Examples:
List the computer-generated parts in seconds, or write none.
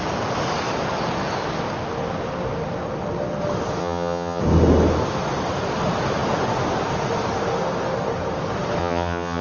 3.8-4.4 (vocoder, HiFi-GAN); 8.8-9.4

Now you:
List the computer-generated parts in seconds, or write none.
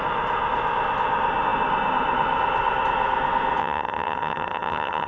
3.6-5.1 (vocoder, HiFi-GAN)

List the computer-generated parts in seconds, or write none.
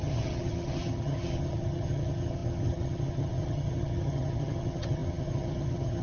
0.0-6.0 (vocoder, HiFi-GAN)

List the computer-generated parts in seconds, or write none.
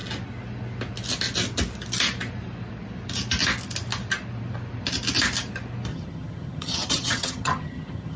5.9-8.2 (vocoder, HiFi-GAN)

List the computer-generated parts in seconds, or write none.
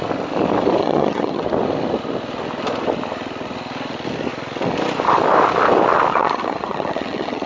0.8-1.4 (vocoder, HiFi-GAN); 6.1-7.5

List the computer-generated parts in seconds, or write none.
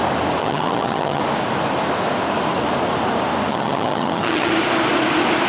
0.4-1.2 (vocoder, HiFi-GAN); 3.5-4.5